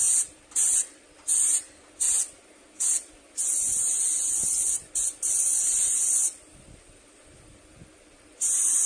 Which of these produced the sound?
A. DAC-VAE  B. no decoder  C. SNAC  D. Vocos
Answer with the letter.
B